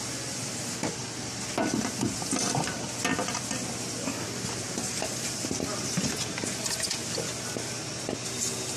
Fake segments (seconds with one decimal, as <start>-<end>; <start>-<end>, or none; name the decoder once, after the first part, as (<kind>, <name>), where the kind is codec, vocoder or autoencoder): none